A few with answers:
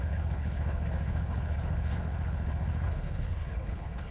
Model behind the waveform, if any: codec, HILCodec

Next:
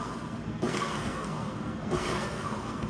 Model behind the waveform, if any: codec, SNAC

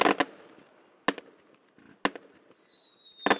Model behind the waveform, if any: none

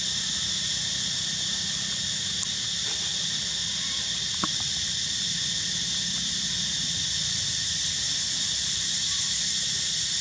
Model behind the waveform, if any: none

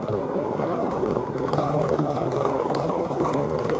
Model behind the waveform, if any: codec, SNAC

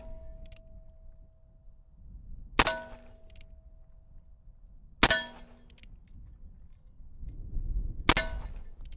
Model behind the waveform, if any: none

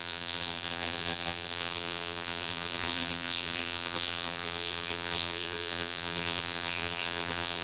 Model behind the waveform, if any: vocoder, BigVGAN v2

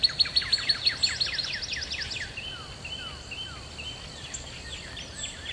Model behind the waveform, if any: none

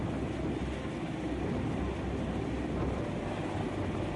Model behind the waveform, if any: none